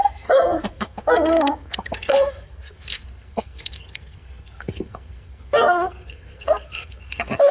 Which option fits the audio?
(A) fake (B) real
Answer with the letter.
A